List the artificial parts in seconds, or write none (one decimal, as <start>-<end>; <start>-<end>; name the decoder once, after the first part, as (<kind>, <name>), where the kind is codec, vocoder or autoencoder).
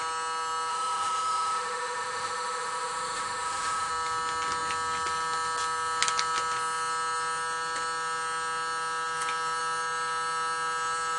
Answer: 0.7-3.9 (autoencoder, DAC-VAE)